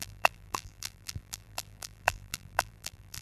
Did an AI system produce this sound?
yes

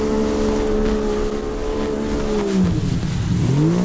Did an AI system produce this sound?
no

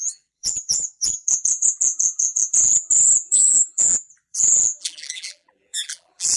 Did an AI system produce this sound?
yes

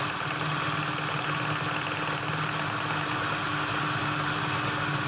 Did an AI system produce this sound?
no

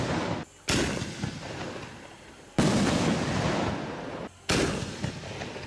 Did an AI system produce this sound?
no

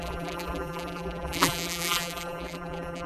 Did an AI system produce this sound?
yes